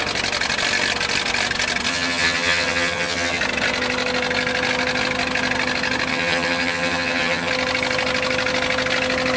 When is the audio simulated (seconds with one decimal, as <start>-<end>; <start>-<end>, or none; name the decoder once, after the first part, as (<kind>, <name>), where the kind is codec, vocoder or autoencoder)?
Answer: 1.9-3.4 (vocoder, HiFi-GAN); 6.1-7.5